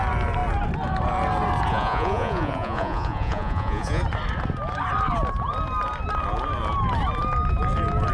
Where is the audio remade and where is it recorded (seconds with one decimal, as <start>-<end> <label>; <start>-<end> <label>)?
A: 0.0-1.7 recorded; 1.7-4.0 remade; 4.0-8.1 recorded